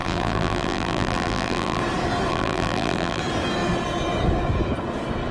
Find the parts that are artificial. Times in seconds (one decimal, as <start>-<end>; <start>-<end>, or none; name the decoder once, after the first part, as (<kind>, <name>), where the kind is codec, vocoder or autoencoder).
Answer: 0.0-1.8 (vocoder, BigVGAN v2); 2.3-3.2